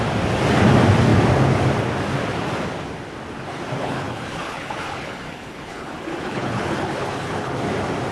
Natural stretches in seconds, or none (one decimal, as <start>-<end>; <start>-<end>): 0.0-3.8; 7.5-8.1